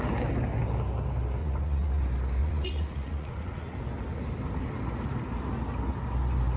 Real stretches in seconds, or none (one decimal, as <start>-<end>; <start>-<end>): 0.0-1.4; 2.0-2.4; 3.8-6.6